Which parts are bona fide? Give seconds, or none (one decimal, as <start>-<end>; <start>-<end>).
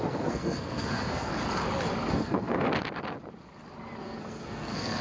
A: 1.3-2.1; 2.7-4.0